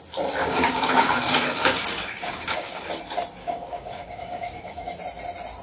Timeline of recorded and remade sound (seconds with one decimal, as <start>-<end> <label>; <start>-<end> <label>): 0.0-0.4 recorded; 0.4-3.0 remade; 3.0-3.4 recorded; 3.4-5.0 remade; 5.0-5.6 recorded